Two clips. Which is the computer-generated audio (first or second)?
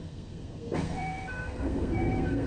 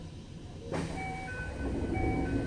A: first